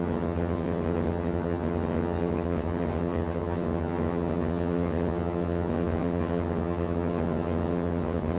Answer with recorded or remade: remade